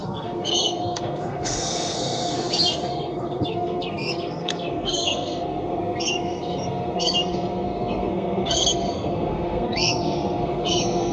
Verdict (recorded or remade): remade